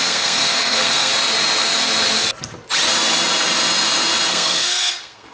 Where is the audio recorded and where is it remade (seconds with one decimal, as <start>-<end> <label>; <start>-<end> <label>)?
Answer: 0.0-1.1 remade; 1.1-4.3 recorded; 4.3-5.3 remade